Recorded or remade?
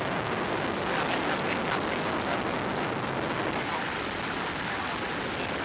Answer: recorded